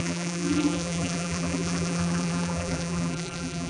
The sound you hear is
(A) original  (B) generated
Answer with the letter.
B